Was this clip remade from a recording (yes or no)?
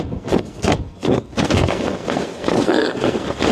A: yes